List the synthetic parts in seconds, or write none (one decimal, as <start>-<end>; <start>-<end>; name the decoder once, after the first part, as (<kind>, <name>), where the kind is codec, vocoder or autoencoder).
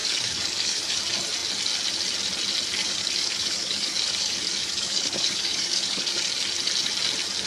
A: 0.0-1.0 (codec, DAC); 2.8-6.2